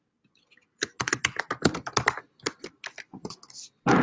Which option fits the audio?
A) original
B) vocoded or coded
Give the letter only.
A